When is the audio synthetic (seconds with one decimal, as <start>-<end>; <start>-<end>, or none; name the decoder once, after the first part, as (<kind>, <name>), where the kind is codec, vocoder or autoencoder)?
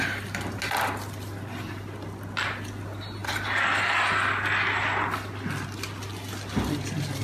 none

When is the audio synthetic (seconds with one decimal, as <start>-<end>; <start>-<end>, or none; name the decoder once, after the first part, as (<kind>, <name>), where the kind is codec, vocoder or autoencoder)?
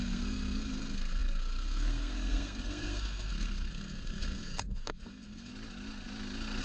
0.0-5.5 (codec, SNAC)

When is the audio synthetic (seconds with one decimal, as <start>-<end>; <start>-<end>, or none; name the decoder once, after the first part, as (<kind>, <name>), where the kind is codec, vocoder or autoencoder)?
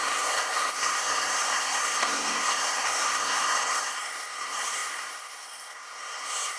0.0-6.6 (codec, SNAC)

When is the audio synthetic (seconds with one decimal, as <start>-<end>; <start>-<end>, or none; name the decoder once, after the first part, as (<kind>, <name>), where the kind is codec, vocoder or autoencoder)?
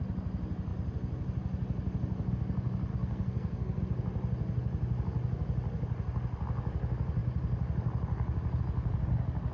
2.9-3.8 (codec, SNAC)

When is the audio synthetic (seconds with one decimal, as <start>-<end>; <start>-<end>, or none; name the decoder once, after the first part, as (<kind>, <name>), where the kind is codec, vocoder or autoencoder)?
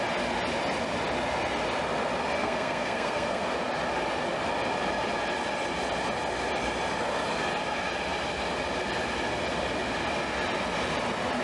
2.4-3.4 (codec, SNAC)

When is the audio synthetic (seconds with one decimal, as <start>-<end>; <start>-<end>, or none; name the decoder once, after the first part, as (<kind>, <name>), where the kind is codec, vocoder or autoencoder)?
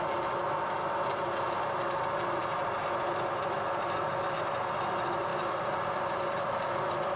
none